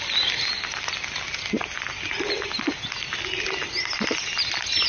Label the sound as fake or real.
real